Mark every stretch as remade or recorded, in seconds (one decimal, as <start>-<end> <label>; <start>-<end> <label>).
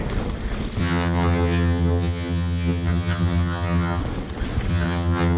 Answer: 0.0-0.8 recorded; 0.8-4.0 remade; 4.0-4.7 recorded; 4.7-5.4 remade